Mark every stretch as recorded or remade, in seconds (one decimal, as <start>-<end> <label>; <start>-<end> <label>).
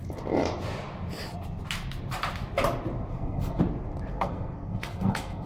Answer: 0.0-3.1 recorded; 3.1-3.6 remade; 3.6-4.1 recorded; 4.1-5.5 remade